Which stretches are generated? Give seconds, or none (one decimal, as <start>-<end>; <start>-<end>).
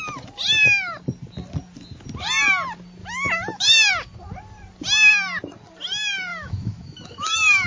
3.0-3.9; 6.3-7.7